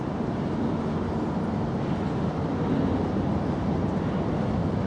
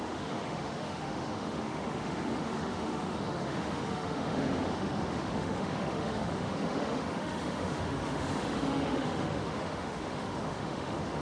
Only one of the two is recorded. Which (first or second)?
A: first